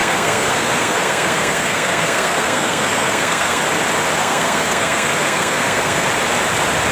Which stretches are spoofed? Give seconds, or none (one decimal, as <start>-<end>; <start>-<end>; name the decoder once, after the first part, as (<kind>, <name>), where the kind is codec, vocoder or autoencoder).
0.0-3.6 (codec, SNAC); 4.2-6.1